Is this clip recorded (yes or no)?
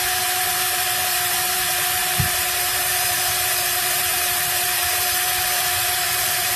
no